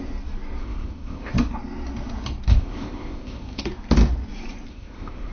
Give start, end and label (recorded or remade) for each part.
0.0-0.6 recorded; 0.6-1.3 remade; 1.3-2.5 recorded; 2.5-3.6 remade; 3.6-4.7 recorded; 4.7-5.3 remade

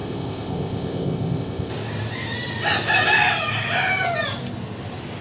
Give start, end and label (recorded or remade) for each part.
0.0-1.7 remade; 1.7-5.2 recorded

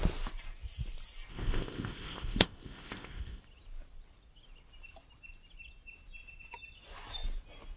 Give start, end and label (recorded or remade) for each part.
0.0-1.3 recorded; 1.3-3.4 remade; 3.4-7.8 recorded

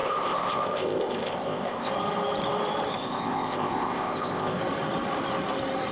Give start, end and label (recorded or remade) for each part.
0.0-1.9 remade; 1.9-2.9 recorded; 2.9-4.6 remade; 4.6-5.9 recorded

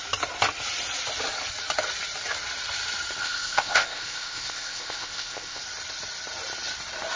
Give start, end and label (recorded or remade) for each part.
0.0-3.2 recorded; 3.2-5.6 remade; 5.6-7.2 recorded

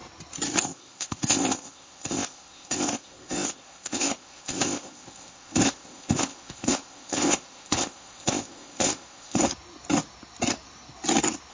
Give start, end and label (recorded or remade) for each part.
0.0-0.6 recorded; 0.6-9.4 remade; 9.4-11.5 recorded